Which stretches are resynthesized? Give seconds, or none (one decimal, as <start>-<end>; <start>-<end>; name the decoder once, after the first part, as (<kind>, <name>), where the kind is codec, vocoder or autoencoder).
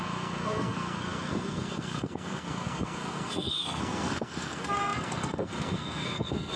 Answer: 0.0-6.6 (codec, SNAC)